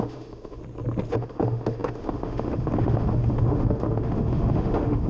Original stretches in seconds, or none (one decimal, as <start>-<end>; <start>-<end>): 0.6-1.1